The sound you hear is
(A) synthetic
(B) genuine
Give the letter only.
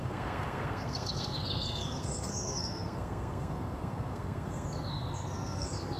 A